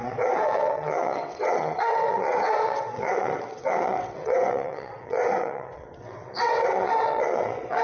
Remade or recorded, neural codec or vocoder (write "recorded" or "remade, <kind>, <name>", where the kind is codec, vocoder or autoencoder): remade, vocoder, WaveNeXt